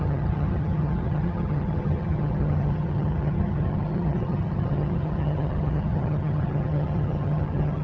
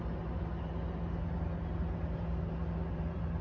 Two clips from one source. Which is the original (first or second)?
second